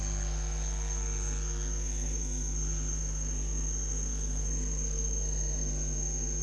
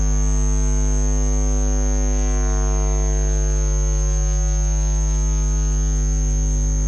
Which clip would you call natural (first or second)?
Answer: second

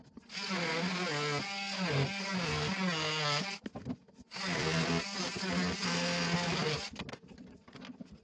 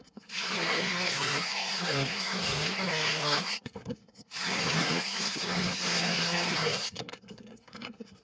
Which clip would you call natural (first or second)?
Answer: first